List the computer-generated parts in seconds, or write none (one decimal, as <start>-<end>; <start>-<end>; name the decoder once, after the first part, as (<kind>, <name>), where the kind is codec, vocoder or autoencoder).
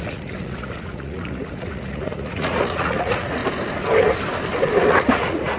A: 0.0-3.4 (vocoder, Vocos); 4.9-5.6